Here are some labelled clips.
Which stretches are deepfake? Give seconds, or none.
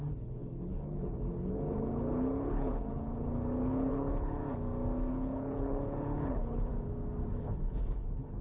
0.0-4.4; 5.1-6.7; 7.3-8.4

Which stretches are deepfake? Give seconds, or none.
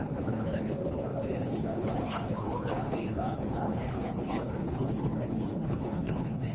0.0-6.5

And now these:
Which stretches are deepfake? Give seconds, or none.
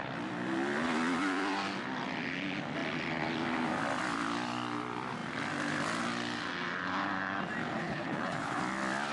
7.8-8.6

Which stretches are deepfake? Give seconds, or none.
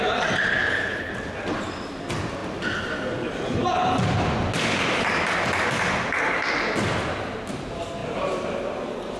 0.5-1.1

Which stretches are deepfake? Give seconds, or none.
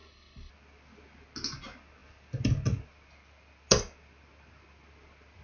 0.0-0.5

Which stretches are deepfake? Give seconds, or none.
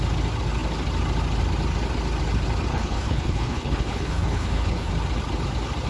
2.7-4.9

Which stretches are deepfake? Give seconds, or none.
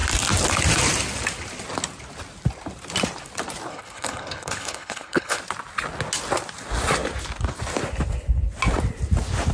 3.7-5.4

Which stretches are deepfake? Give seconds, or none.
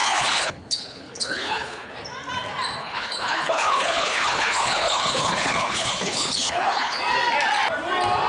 0.0-1.9; 2.8-7.0